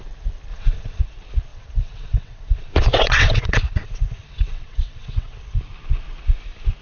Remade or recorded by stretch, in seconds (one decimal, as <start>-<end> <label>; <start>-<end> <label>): 0.0-0.5 recorded; 0.5-1.0 remade; 1.0-1.5 recorded; 1.5-5.6 remade; 5.6-6.8 recorded